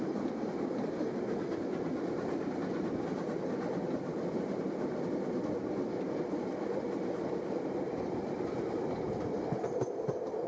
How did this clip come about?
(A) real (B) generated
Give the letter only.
A